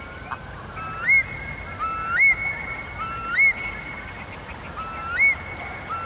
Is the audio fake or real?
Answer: real